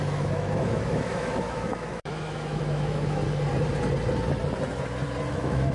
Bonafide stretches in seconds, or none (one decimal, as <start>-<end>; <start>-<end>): 3.2-5.3